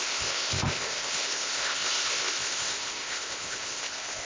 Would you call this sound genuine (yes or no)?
no